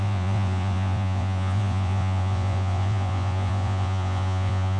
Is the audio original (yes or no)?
no